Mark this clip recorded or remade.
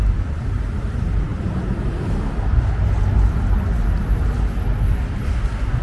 recorded